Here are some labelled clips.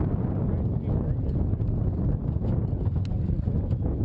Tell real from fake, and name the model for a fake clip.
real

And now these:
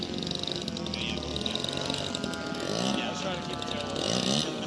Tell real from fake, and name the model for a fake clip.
real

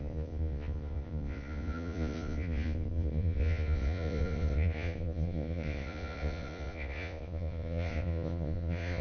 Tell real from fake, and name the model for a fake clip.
fake, vocoder, Vocos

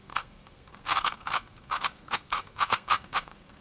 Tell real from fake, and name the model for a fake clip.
fake, codec, SNAC